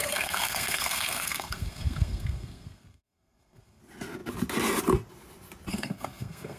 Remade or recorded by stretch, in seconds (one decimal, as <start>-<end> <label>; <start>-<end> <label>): 0.0-3.8 remade; 3.8-5.7 recorded; 5.7-6.6 remade